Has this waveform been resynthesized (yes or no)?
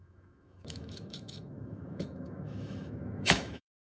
yes